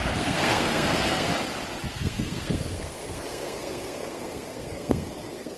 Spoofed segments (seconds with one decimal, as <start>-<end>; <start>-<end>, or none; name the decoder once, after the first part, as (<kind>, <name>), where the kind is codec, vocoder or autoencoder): 0.0-1.3 (codec, SNAC); 1.9-5.6